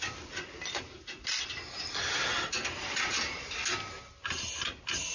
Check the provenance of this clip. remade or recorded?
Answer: recorded